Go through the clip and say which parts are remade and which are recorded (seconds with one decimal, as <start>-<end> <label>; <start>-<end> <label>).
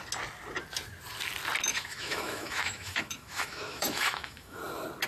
0.0-1.7 recorded; 1.7-4.6 remade; 4.6-5.1 recorded